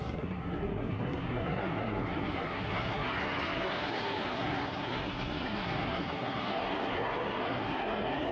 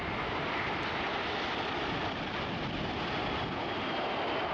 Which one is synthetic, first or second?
first